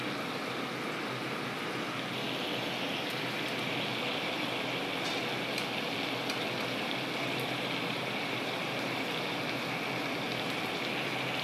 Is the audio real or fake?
real